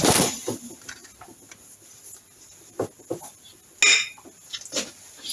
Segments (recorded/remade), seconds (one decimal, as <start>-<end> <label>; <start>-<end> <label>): 0.0-5.3 recorded

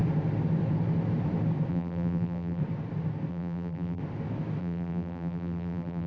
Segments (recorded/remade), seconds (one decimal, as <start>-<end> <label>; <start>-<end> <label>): 0.0-1.7 recorded; 1.7-2.6 remade; 2.6-3.3 recorded; 3.3-4.0 remade; 4.0-4.6 recorded; 4.6-6.1 remade

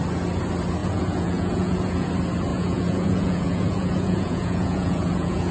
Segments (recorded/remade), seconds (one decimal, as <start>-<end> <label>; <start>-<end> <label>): 0.0-0.8 recorded; 0.8-2.1 remade; 2.1-2.5 recorded; 2.5-5.5 remade

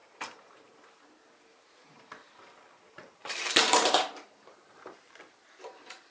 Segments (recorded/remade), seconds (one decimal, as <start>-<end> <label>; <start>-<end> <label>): 0.0-1.1 remade; 1.1-1.5 recorded; 1.5-5.2 remade; 5.2-6.1 recorded